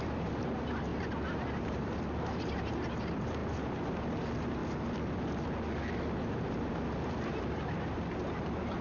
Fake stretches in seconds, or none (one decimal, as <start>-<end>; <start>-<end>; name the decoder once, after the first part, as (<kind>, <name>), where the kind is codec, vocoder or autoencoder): 0.0-4.6 (vocoder, BigVGAN v2); 5.9-8.8